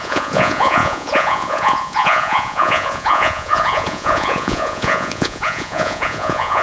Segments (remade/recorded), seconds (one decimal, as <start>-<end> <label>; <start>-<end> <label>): 0.0-6.6 remade